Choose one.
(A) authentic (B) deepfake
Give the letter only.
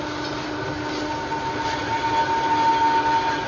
A